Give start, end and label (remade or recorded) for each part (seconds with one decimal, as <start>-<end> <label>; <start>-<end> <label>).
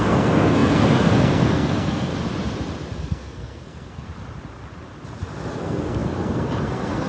0.0-2.1 remade; 2.1-3.0 recorded; 3.0-4.1 remade; 4.1-5.5 recorded; 5.5-7.1 remade